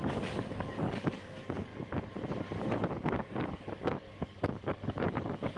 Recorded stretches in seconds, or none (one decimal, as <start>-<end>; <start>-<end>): 1.7-3.0